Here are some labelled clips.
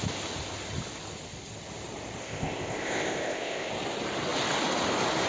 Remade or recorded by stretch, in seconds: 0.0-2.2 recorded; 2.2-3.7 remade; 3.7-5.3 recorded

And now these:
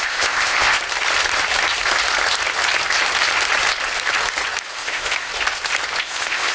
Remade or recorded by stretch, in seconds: 0.0-0.8 remade; 0.8-4.7 recorded; 4.7-5.3 remade; 5.3-6.0 recorded; 6.0-6.5 remade

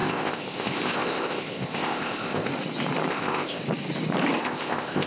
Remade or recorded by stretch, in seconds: 0.0-2.5 remade; 2.5-3.1 recorded; 3.1-3.6 remade; 3.6-4.4 recorded; 4.4-5.1 remade

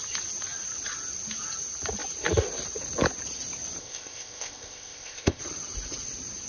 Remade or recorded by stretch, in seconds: 0.0-3.8 recorded; 3.8-5.4 remade; 5.4-6.5 recorded

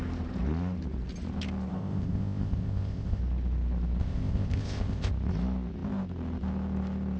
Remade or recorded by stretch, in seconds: 0.0-1.7 recorded; 1.7-3.2 remade; 3.2-4.0 recorded; 4.0-5.1 remade; 5.1-7.2 recorded